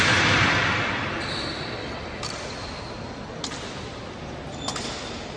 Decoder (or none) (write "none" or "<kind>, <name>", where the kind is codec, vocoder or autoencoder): none